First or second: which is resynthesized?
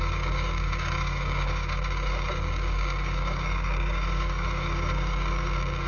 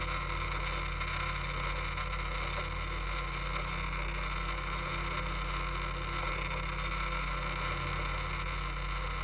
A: first